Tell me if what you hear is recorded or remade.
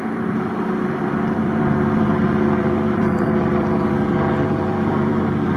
remade